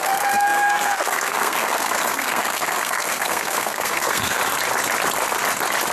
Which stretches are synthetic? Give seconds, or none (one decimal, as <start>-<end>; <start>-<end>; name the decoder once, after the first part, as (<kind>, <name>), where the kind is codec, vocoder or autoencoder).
0.0-4.4 (codec, SNAC)